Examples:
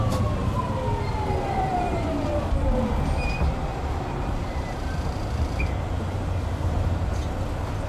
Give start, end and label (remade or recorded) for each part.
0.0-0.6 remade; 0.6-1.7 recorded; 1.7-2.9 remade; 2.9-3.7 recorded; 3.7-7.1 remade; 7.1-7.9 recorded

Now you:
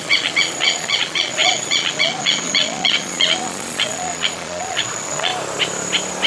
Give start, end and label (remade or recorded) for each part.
0.0-5.3 remade; 5.3-6.3 recorded

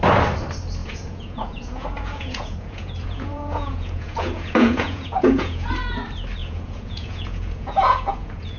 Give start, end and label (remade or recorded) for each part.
0.0-0.8 recorded; 0.8-5.7 remade; 5.7-6.4 recorded; 6.4-8.6 remade

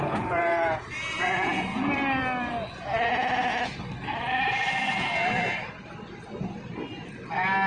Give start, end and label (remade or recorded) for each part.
0.0-1.8 remade; 1.8-2.5 recorded; 2.5-3.5 remade; 3.5-7.7 recorded

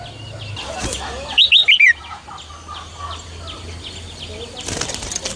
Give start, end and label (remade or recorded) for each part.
0.0-5.4 recorded